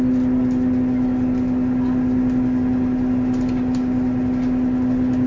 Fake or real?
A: real